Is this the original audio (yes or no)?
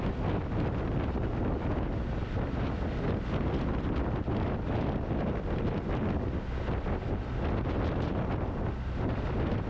yes